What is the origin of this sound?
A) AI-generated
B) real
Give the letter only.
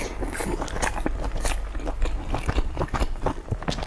B